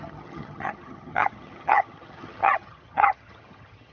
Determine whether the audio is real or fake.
fake